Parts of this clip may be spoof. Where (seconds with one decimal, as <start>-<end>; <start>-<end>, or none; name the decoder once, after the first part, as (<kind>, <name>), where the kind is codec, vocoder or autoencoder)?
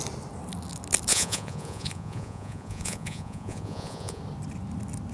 1.1-4.2 (vocoder, Vocos)